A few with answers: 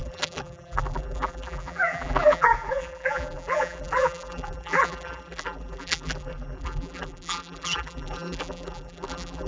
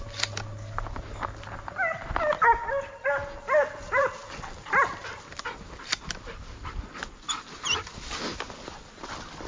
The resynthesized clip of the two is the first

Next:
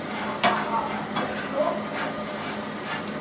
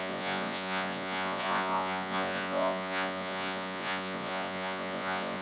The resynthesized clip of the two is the second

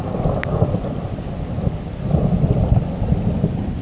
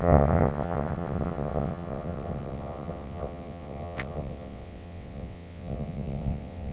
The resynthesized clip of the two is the second